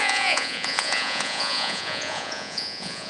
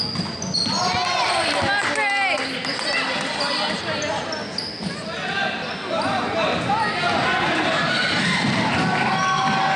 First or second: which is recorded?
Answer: second